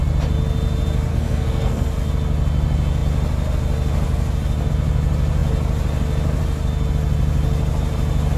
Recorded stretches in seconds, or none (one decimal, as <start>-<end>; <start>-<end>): 0.0-1.1; 1.9-8.4